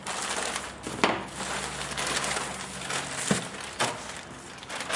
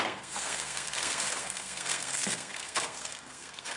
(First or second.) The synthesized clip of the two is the second